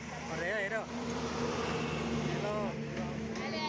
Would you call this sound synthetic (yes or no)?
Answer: no